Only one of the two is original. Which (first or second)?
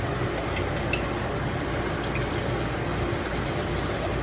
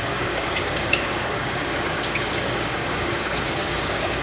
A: first